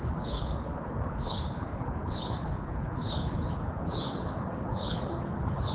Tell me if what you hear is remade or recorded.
remade